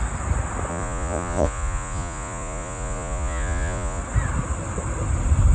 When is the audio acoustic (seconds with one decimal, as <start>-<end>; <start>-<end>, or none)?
0.0-0.7; 4.0-5.5